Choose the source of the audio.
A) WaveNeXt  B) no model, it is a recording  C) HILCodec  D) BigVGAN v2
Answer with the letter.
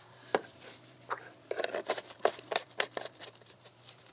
D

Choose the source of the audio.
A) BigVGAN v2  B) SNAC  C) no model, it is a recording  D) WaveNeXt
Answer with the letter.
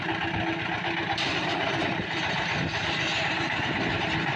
A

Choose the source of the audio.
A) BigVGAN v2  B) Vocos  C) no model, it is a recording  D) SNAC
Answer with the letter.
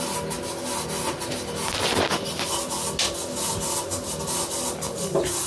C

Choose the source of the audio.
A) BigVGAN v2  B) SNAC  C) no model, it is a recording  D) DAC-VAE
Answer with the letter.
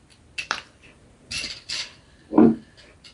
A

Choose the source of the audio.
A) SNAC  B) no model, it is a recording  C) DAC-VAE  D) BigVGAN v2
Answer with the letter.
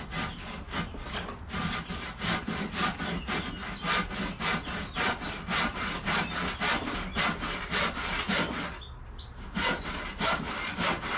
B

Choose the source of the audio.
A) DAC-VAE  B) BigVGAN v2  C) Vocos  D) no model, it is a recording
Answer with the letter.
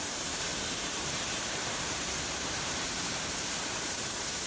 B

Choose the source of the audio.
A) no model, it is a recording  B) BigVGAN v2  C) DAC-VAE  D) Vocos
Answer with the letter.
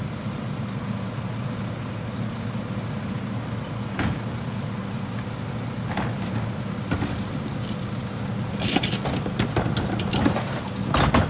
A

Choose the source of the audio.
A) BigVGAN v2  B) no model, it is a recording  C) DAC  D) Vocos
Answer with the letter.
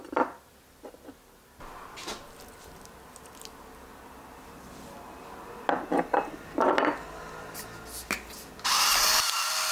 B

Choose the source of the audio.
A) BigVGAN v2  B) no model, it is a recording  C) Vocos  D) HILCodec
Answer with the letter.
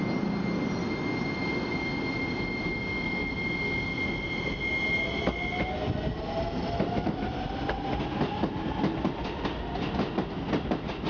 B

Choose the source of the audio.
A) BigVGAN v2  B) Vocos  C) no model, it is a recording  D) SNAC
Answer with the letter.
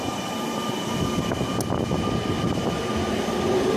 C